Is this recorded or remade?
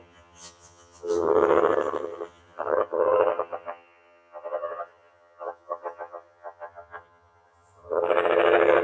remade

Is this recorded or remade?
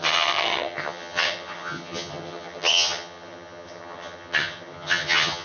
remade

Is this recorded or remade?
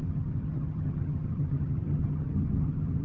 remade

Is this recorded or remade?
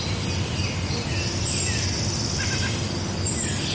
recorded